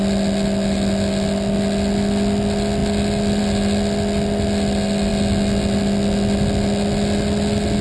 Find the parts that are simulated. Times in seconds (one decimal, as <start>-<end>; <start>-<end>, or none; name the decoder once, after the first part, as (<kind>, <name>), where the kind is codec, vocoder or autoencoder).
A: none